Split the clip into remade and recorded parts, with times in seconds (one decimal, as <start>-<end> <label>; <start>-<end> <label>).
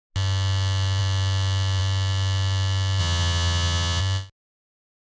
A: 0.0-3.0 recorded; 3.0-4.0 remade; 4.0-5.0 recorded